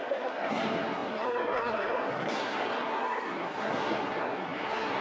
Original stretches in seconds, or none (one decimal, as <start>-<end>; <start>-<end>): none